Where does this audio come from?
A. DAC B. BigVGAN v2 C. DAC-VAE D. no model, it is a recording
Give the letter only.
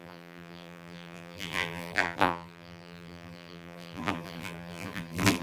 B